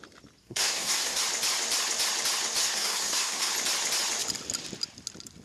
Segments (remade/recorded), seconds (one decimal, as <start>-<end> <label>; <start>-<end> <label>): 0.0-0.4 recorded; 0.4-1.2 remade; 1.2-2.6 recorded; 2.6-3.5 remade; 3.5-5.4 recorded